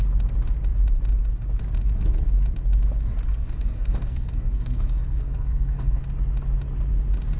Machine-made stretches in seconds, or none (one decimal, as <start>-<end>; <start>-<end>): 3.3-6.0